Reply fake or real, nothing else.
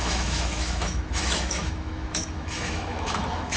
fake